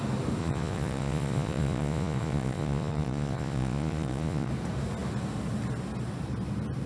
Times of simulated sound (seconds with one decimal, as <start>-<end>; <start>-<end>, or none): 0.4-4.5